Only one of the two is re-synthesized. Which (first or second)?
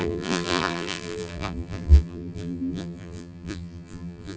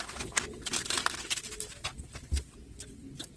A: first